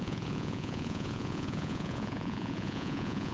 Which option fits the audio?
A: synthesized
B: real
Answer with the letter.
A